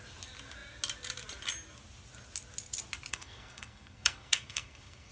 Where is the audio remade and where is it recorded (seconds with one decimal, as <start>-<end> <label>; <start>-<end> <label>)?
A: 0.0-3.1 recorded; 3.1-5.1 remade